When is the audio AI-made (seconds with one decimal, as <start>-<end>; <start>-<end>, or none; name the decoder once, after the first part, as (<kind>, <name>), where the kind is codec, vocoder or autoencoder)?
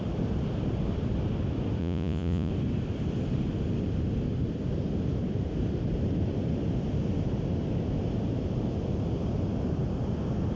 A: 1.8-2.5 (vocoder, Vocos)